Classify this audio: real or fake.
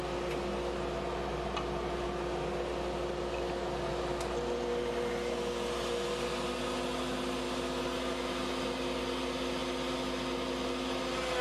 real